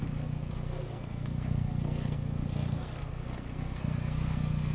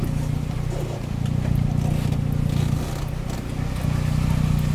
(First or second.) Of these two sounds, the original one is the second